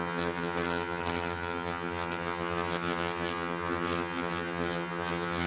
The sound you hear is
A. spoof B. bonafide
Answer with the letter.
A